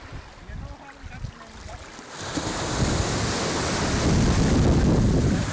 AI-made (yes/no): no